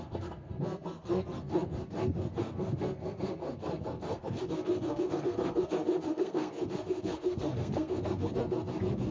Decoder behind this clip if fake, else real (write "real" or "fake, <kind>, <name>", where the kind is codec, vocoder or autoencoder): fake, codec, SNAC